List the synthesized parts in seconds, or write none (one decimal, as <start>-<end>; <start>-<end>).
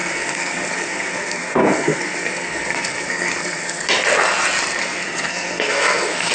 0.0-3.8; 4.8-6.3